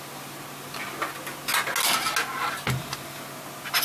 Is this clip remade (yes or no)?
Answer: no